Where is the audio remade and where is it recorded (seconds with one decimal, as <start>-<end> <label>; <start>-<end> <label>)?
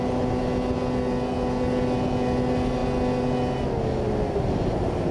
0.0-5.1 recorded